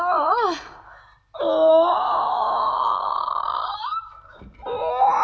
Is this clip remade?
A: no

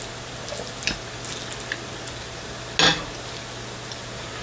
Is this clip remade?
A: no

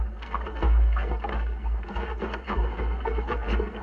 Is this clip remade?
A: yes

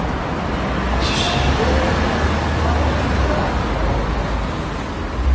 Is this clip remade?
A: no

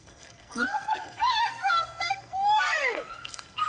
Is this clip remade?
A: yes